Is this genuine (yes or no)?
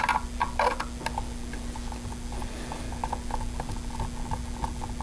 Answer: yes